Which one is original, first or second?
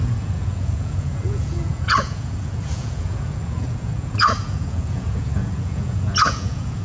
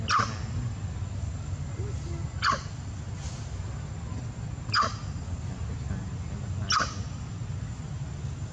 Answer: second